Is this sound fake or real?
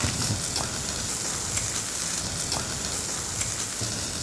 real